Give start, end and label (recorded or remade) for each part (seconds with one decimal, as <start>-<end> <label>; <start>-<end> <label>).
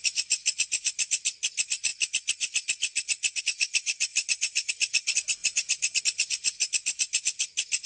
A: 0.0-4.1 recorded; 4.1-4.7 remade; 4.7-5.4 recorded; 5.4-6.0 remade; 6.0-7.9 recorded